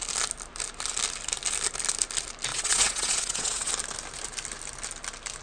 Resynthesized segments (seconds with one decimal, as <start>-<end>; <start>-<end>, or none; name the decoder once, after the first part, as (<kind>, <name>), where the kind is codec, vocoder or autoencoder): 2.5-3.7 (vocoder, WaveNeXt)